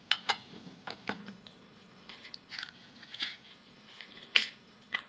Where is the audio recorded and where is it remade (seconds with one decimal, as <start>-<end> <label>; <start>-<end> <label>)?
0.0-1.2 recorded; 1.2-2.5 remade; 2.5-3.5 recorded; 3.5-5.1 remade